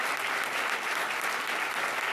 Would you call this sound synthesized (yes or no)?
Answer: no